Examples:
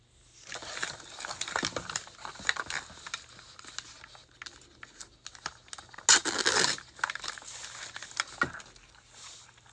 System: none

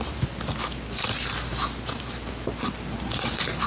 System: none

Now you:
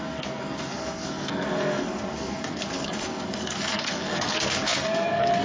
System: codec, SNAC